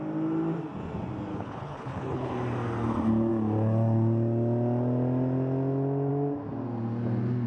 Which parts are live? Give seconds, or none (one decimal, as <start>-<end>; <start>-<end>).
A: 0.0-1.3; 2.3-7.5